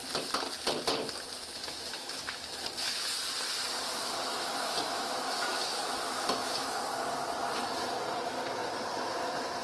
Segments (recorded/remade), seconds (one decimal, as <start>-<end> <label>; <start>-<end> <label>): 0.0-1.4 recorded; 1.4-2.5 remade; 2.5-4.3 recorded; 4.3-6.7 remade; 6.7-9.6 recorded